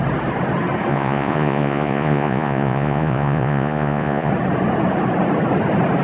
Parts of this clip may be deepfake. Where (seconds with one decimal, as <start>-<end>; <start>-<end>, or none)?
0.9-4.3